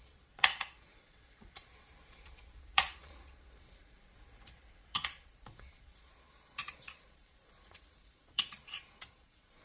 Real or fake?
fake